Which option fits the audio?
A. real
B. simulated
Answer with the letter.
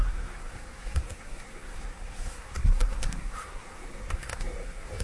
B